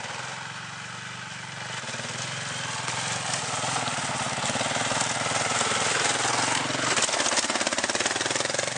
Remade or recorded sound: recorded